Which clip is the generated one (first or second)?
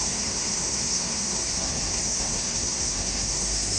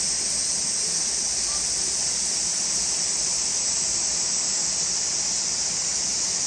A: first